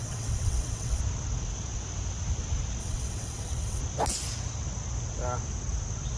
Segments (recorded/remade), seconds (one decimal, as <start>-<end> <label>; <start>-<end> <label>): 0.0-1.0 remade; 1.0-2.8 recorded; 2.8-3.8 remade; 3.8-6.2 recorded